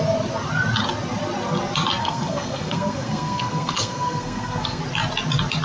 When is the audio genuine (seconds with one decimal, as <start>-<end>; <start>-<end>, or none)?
0.0-2.0; 4.8-5.6